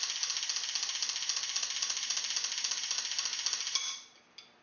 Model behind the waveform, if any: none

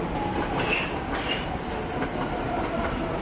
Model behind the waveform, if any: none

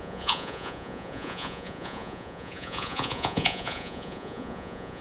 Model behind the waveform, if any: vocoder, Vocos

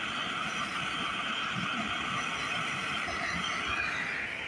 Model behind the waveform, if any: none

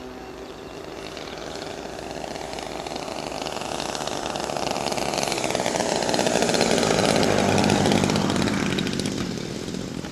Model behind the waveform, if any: none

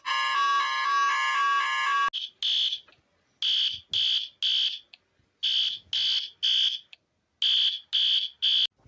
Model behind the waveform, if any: none